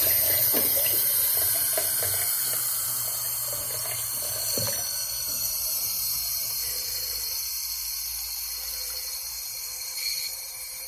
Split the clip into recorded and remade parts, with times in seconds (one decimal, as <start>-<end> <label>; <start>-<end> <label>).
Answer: 0.0-1.7 remade; 1.7-5.2 recorded; 5.2-6.6 remade; 6.6-10.3 recorded; 10.3-10.9 remade